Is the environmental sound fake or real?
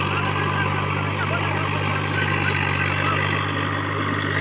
real